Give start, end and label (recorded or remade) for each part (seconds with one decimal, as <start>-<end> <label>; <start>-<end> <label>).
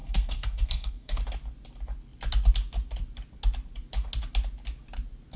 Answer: 0.0-1.2 remade; 1.2-5.4 recorded